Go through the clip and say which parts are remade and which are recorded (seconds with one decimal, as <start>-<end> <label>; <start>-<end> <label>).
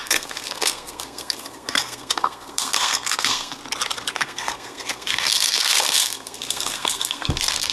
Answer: 0.0-3.6 remade; 3.6-4.1 recorded; 4.1-7.7 remade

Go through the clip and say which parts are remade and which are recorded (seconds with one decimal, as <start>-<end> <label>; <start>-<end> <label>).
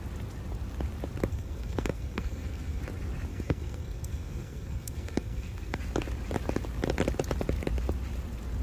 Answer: 0.0-1.3 recorded; 1.3-2.8 remade; 2.8-3.3 recorded; 3.3-5.8 remade; 5.8-8.6 recorded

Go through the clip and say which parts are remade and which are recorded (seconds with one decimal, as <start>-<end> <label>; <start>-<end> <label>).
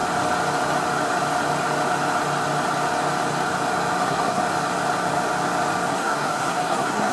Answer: 0.0-4.0 recorded; 4.0-4.4 remade; 4.4-5.9 recorded; 5.9-7.1 remade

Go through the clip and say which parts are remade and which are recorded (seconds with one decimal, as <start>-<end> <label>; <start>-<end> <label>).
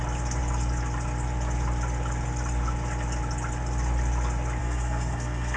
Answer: 0.0-4.6 recorded; 4.6-5.6 remade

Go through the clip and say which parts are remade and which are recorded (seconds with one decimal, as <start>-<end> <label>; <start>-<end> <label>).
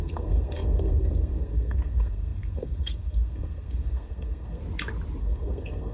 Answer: 0.0-4.6 remade; 4.6-5.2 recorded; 5.2-5.9 remade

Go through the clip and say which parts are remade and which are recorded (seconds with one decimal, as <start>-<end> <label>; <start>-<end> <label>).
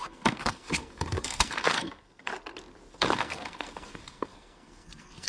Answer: 0.0-2.3 remade; 2.3-2.9 recorded; 2.9-5.3 remade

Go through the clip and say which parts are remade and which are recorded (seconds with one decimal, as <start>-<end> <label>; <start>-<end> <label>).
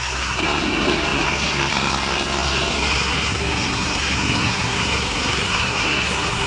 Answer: 0.0-6.5 remade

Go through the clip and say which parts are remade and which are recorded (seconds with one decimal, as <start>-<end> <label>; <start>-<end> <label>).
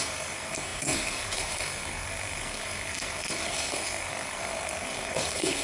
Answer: 0.0-5.6 remade